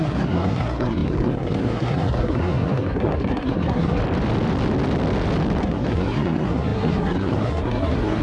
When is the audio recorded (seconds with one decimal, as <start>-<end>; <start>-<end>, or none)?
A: 4.0-5.6

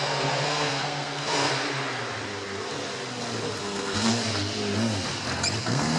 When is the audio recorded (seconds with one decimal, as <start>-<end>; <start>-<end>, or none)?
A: 1.5-3.6; 4.2-5.6

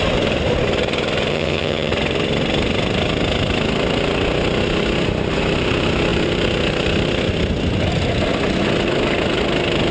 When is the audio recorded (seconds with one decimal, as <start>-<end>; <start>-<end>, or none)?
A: 0.0-1.3; 1.9-9.9

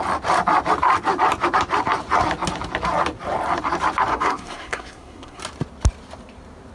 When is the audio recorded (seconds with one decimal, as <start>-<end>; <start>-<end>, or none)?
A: 0.0-4.1; 5.4-6.7